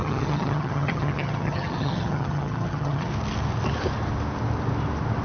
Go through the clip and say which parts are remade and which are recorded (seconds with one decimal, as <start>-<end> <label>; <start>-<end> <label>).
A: 0.0-3.1 remade; 3.1-5.2 recorded